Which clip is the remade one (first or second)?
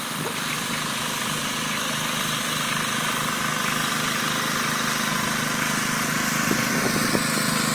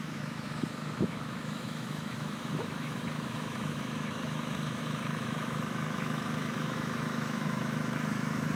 second